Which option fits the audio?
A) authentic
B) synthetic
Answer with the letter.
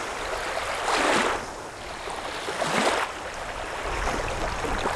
A